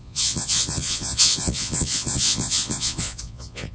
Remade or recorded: remade